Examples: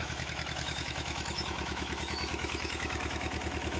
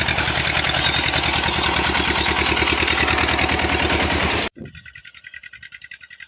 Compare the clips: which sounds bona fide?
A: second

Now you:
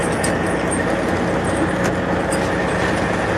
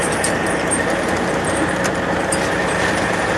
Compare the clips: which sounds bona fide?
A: first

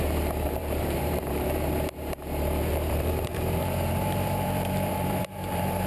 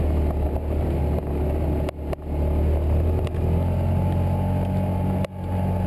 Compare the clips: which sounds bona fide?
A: second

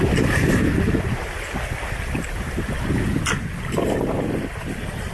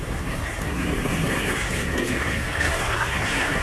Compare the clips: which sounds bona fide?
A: first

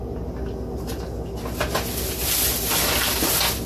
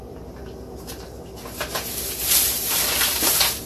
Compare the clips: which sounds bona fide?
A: first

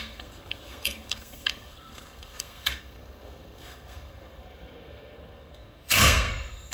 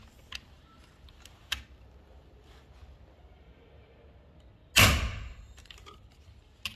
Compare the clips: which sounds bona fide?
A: second